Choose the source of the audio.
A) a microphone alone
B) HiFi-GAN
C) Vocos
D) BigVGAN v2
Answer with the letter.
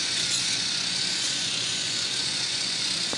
C